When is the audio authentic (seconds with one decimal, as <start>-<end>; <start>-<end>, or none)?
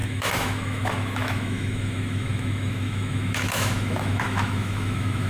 none